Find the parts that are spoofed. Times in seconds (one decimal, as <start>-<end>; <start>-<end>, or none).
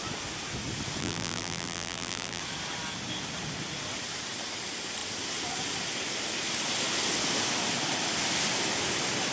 1.0-2.4